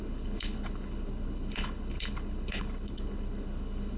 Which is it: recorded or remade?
remade